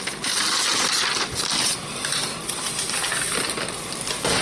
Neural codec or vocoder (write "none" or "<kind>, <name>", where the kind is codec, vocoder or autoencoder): none